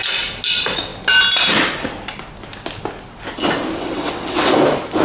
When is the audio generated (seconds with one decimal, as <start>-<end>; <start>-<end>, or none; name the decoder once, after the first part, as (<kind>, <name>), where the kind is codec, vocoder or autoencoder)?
3.8-4.5 (vocoder, WaveNeXt)